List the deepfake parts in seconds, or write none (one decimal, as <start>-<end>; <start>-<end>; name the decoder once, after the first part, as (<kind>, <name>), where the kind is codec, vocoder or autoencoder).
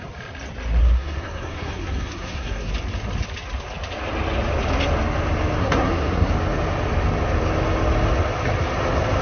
0.8-2.7 (codec, SNAC); 5.6-6.3